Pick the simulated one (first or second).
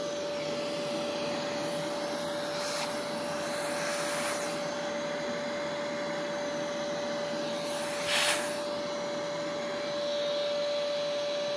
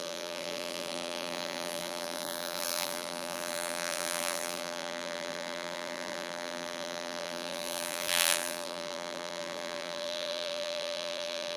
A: second